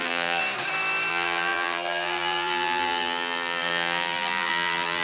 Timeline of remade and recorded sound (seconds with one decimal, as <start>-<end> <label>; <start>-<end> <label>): 0.0-0.4 remade; 0.4-1.1 recorded; 1.1-5.0 remade